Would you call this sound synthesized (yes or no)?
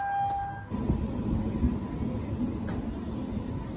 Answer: no